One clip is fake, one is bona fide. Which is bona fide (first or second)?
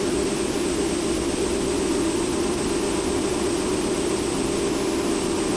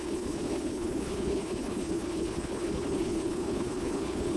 first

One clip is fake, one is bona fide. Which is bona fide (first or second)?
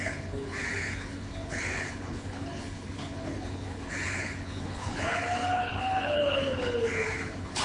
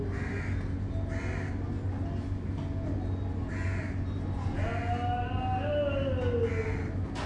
second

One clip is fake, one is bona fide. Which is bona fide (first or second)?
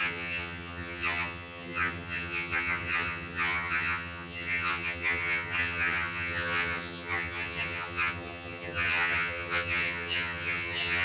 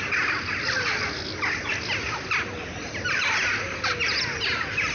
second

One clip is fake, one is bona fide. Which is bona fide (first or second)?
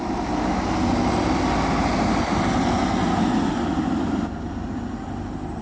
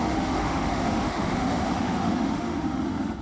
first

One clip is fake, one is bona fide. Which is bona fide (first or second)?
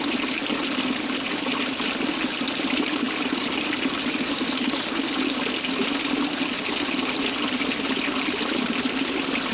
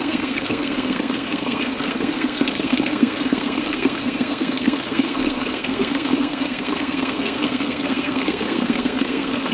first